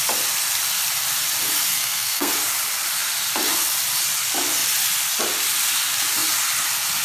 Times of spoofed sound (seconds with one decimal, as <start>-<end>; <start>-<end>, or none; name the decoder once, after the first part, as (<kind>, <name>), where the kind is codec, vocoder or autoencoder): 1.7-2.3 (codec, SNAC)